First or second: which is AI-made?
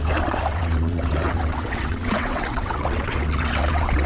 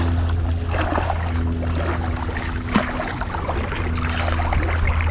first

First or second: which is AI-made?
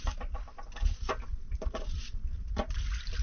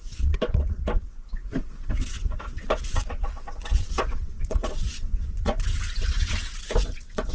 second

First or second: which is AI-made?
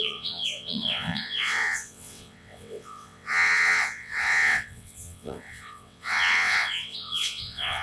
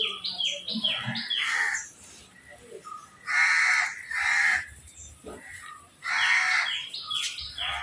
first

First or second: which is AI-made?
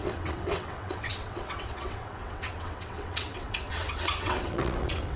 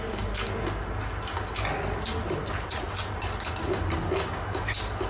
first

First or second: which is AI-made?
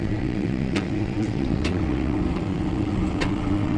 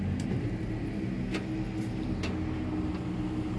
first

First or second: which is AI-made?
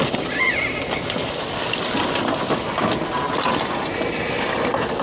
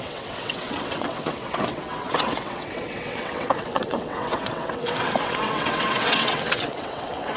second